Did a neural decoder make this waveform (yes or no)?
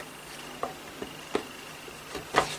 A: no